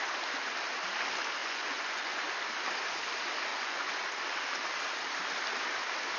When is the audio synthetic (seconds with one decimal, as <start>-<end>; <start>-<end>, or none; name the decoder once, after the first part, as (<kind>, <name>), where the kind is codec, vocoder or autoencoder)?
1.4-2.2 (vocoder, Vocos); 3.5-4.1